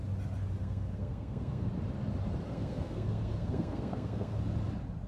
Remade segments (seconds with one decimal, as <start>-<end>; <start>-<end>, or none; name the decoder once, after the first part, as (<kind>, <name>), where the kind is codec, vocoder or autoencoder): 0.6-1.7 (codec, SNAC); 2.5-4.4